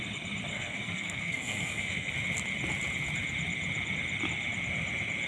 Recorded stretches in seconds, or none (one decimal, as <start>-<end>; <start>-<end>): 0.0-0.5; 2.1-5.3

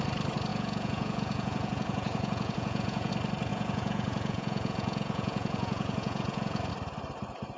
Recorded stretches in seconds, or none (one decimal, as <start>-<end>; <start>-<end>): 0.0-0.5; 3.1-3.5; 6.7-7.6

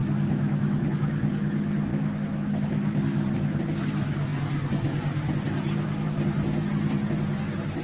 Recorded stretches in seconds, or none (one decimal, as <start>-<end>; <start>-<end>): 0.9-1.9; 3.0-7.8

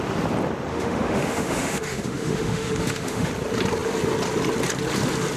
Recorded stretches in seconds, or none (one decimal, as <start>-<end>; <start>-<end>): 0.0-0.7; 3.3-5.4